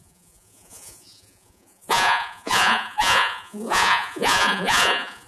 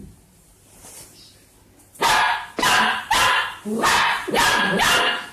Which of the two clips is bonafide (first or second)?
second